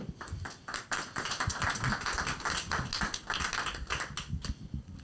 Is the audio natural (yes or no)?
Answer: yes